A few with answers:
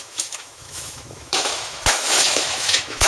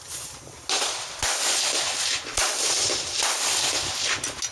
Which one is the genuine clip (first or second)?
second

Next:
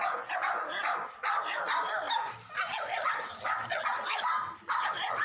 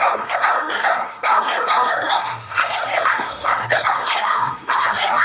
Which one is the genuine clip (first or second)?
first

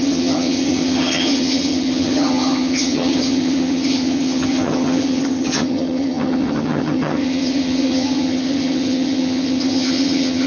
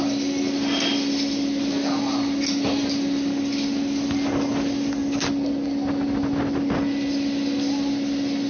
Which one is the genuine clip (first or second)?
second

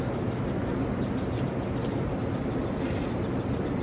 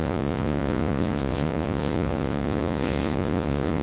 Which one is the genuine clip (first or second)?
first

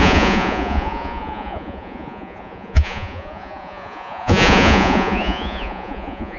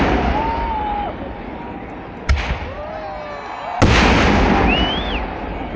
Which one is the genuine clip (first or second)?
second